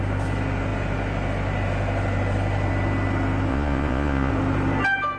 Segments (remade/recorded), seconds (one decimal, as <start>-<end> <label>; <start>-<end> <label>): 0.0-3.5 recorded; 3.5-4.3 remade; 4.3-5.2 recorded